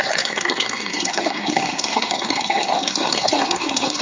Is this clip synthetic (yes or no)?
yes